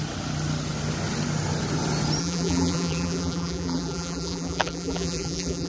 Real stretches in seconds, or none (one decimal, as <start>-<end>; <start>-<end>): 0.0-2.2